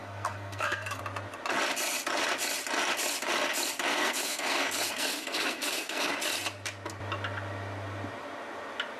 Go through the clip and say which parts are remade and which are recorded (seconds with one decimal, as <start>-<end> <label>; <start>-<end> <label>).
0.0-1.0 remade; 1.0-3.9 recorded; 3.9-6.1 remade; 6.1-9.0 recorded